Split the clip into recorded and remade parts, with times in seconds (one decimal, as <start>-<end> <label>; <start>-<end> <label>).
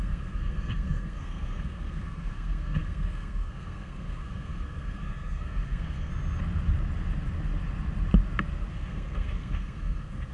0.0-6.1 remade; 6.1-8.7 recorded; 8.7-10.3 remade